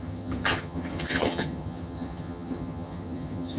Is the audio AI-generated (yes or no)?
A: yes